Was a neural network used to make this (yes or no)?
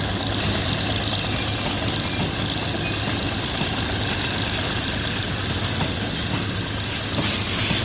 no